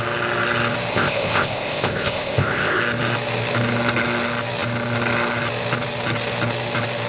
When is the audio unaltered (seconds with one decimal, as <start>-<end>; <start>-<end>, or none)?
0.0-0.9; 2.8-7.1